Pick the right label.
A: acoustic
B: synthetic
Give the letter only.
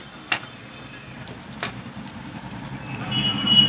A